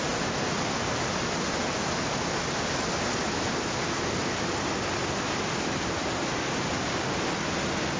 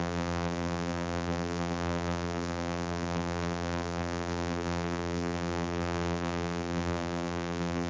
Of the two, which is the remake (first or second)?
second